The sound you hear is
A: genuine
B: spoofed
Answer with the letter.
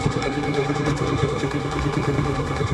B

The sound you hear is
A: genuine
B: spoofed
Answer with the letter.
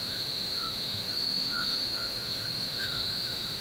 B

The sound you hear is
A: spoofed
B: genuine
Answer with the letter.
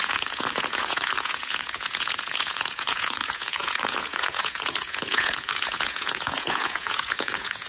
A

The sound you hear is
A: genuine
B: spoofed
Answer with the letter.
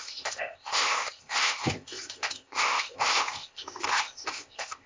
B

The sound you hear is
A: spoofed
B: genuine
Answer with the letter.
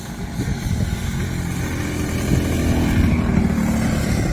B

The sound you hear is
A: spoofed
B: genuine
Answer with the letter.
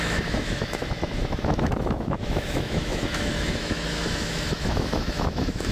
A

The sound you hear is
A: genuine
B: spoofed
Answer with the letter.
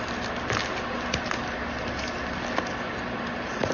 A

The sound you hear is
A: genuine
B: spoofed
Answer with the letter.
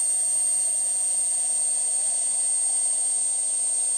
A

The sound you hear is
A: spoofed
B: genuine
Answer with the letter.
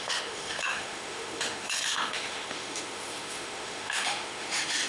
A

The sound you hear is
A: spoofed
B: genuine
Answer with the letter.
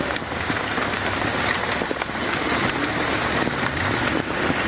A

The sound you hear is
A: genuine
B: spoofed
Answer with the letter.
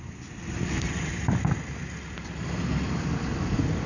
A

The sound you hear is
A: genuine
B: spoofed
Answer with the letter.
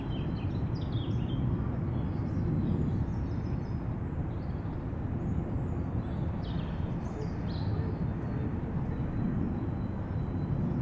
A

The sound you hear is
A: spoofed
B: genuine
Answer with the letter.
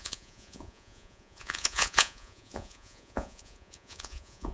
A